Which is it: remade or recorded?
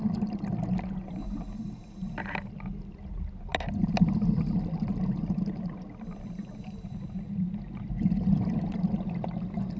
recorded